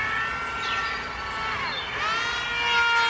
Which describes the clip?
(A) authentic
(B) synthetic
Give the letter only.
A